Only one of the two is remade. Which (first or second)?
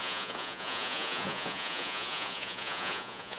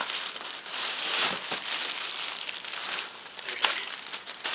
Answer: first